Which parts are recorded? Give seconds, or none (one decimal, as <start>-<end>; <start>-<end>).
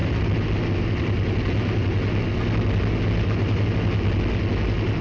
0.0-5.0